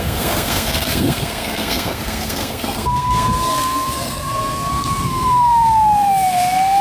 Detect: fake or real fake